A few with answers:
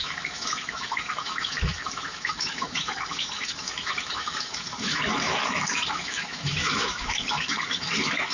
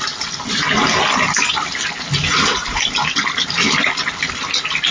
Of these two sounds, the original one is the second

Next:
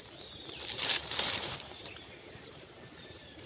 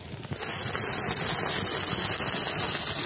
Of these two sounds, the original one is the second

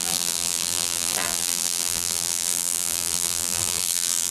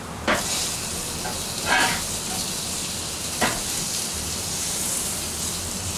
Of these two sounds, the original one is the second